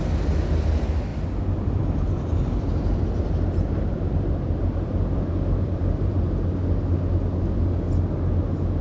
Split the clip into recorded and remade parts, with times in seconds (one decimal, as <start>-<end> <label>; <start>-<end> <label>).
0.0-1.1 recorded; 1.1-6.2 remade; 6.2-8.8 recorded